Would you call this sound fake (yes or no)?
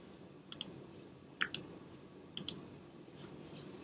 no